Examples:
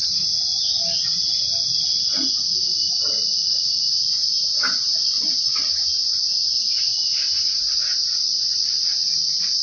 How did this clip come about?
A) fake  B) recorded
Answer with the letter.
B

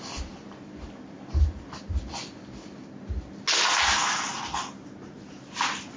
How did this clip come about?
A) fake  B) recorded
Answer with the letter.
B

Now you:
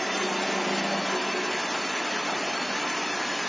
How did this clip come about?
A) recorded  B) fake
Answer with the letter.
A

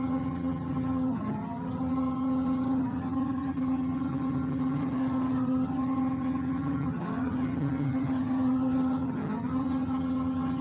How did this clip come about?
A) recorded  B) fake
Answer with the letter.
B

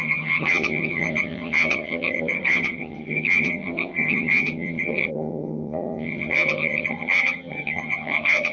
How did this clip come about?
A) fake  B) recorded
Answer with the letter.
A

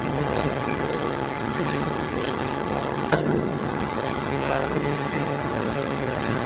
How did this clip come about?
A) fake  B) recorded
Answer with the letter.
A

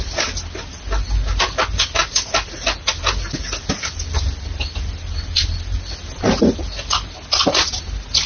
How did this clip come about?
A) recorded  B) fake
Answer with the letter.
A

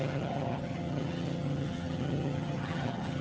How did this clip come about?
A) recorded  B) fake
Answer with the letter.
B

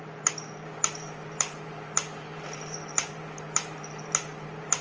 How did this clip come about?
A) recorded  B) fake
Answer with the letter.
A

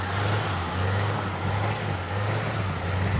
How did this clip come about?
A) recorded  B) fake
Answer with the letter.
A